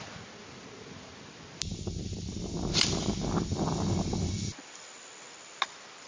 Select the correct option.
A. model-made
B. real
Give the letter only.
B